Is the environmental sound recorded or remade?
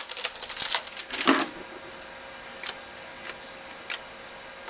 recorded